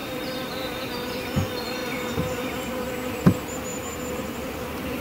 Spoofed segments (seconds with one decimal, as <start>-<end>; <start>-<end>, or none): 0.0-0.5; 1.8-2.9; 3.7-5.0